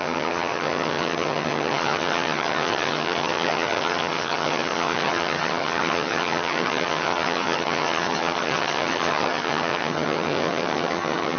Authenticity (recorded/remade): remade